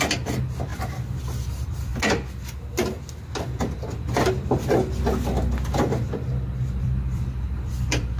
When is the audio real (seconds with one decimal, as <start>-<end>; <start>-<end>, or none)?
0.7-1.2; 1.9-6.8